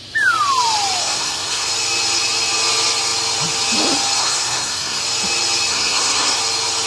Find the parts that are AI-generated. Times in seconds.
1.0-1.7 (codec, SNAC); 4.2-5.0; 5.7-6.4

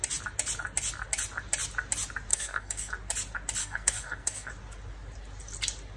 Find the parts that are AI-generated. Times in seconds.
2.3-2.9 (codec, SNAC); 3.6-4.5

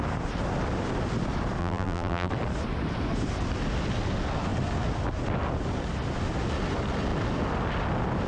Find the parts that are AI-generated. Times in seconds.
1.6-2.3 (vocoder, BigVGAN v2)